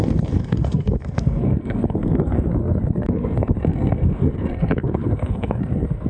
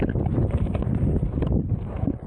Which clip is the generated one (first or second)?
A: first